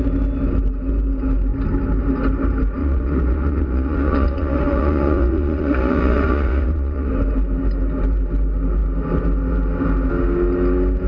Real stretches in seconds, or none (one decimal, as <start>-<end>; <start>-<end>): 0.0-2.8; 7.1-11.1

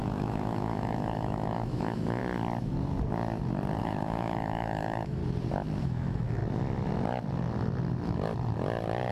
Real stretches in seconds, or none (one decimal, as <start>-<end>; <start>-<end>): 2.2-3.8; 5.2-5.8; 6.4-9.1

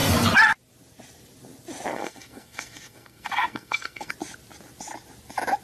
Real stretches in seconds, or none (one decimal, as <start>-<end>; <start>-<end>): 0.0-1.9; 4.1-5.6